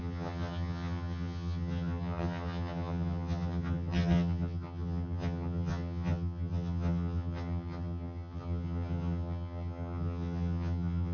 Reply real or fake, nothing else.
fake